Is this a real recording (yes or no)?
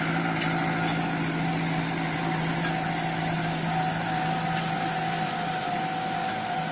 yes